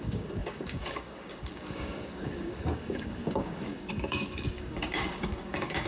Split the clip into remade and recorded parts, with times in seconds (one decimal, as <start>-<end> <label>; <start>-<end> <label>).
0.0-5.9 remade